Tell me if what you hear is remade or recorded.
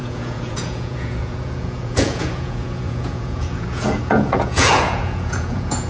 remade